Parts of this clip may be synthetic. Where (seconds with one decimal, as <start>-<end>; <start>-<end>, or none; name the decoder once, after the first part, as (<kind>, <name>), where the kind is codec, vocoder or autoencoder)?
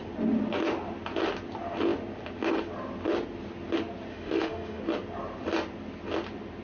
4.1-4.8 (autoencoder, DAC-VAE)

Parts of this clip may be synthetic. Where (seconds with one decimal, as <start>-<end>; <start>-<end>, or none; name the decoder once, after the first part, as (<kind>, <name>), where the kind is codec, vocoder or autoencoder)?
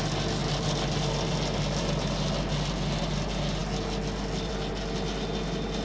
none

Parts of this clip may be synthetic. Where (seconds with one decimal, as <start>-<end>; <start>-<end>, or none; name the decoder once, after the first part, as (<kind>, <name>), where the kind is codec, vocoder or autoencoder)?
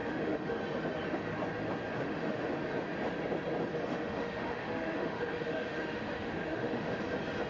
0.0-0.6 (autoencoder, DAC-VAE); 1.9-2.5; 3.8-7.0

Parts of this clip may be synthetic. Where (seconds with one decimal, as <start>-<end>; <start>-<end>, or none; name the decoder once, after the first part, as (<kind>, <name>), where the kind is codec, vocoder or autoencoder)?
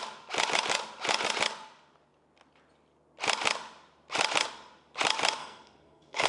5.4-6.3 (codec, SNAC)